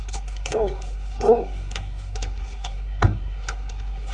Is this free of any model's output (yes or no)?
no